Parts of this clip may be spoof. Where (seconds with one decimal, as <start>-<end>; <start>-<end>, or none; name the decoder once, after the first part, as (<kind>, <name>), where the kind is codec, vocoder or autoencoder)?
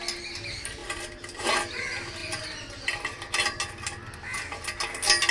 none